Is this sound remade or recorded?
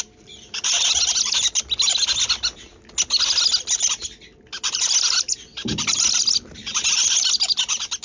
recorded